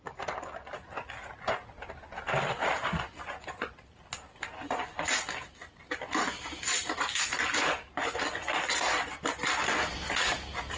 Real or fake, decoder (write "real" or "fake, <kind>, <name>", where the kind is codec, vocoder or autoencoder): real